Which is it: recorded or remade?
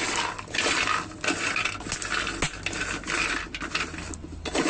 recorded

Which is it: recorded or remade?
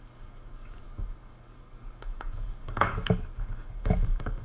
remade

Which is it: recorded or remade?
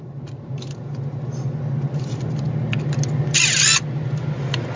recorded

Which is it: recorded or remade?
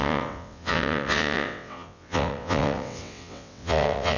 remade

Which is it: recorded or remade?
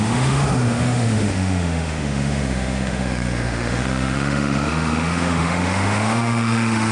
remade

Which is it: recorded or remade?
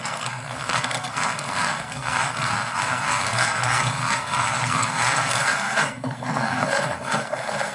remade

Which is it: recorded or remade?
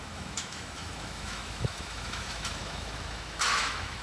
remade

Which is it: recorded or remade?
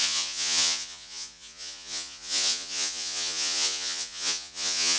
remade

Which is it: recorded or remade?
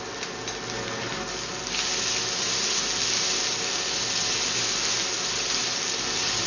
recorded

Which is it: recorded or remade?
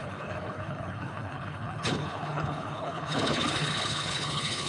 remade